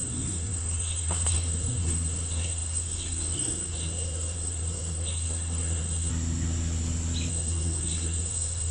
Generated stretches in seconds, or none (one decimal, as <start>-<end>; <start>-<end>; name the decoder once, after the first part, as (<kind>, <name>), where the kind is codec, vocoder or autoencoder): 0.0-6.1 (codec, SNAC); 7.3-8.7